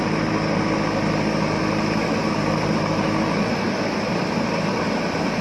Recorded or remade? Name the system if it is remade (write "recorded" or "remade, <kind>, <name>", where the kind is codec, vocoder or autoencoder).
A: remade, vocoder, BigVGAN v2